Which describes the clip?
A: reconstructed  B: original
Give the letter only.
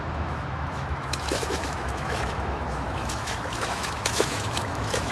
A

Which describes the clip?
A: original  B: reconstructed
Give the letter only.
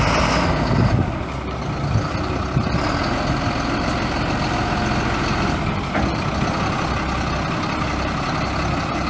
A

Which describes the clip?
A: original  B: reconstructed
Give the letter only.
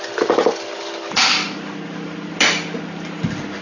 A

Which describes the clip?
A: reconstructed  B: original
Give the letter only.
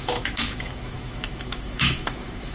A